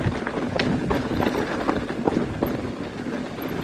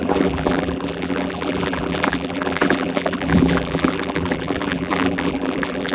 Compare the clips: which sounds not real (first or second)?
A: second